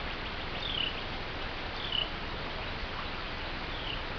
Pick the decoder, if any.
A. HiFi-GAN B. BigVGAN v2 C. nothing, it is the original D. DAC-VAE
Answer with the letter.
C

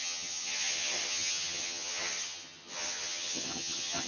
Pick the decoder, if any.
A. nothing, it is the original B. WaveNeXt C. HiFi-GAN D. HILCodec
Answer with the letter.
C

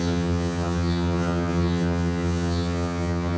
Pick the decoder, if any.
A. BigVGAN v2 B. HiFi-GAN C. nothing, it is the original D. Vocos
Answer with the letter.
B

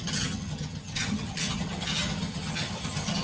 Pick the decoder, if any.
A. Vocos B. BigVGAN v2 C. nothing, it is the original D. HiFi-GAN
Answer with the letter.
D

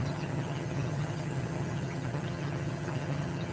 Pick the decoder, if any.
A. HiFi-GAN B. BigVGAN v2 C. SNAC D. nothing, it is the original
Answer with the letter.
A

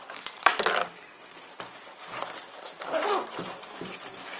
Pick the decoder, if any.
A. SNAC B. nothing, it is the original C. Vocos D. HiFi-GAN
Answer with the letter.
B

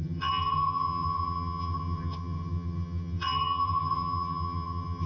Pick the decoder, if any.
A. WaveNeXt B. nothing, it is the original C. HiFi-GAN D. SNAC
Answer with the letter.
C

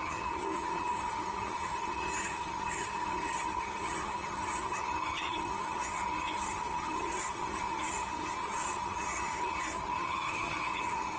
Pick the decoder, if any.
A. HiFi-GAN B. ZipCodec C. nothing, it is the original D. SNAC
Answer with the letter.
A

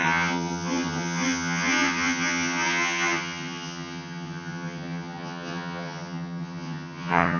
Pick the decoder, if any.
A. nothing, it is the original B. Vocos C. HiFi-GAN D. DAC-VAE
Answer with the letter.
C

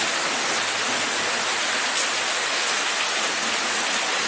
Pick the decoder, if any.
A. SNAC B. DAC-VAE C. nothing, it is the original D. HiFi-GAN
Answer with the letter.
C